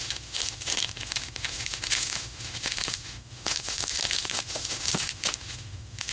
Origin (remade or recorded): remade